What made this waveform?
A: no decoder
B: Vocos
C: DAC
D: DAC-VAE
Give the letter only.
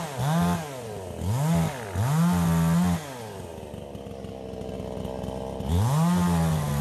A